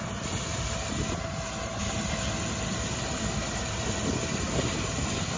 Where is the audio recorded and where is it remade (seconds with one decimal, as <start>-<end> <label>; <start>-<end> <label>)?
0.0-5.4 recorded